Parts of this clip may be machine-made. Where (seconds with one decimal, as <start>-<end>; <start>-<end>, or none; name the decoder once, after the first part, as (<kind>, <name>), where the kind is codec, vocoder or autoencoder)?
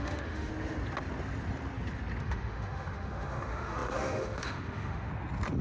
0.0-0.5 (autoencoder, DAC-VAE); 2.2-5.1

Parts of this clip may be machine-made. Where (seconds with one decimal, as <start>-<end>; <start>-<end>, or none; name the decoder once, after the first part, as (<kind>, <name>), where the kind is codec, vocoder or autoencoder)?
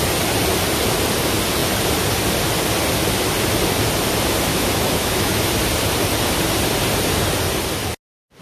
4.5-5.5 (autoencoder, DAC-VAE)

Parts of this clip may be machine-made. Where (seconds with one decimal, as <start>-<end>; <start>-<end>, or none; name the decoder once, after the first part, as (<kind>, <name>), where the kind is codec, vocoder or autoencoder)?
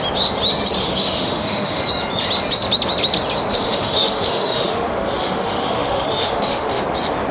0.8-1.8 (autoencoder, DAC-VAE); 3.5-6.8